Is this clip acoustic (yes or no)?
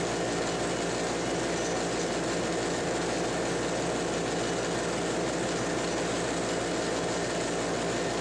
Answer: yes